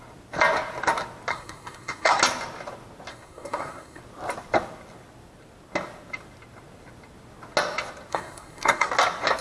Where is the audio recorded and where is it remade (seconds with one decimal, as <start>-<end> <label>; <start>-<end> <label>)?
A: 0.0-1.3 recorded; 1.3-2.2 remade; 2.2-3.1 recorded; 3.1-4.0 remade; 4.0-8.1 recorded; 8.1-8.9 remade; 8.9-9.4 recorded